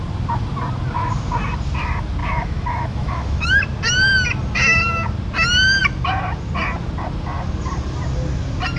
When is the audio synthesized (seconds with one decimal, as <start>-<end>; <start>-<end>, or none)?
2.2-3.6